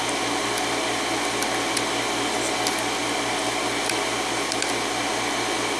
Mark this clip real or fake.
real